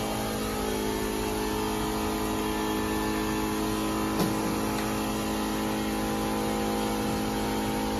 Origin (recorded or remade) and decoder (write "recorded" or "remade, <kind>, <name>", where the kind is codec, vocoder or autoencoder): recorded